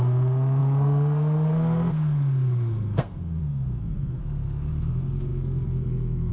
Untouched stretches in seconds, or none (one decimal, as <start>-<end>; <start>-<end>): none